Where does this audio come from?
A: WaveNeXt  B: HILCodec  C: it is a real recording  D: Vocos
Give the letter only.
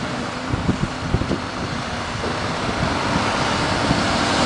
C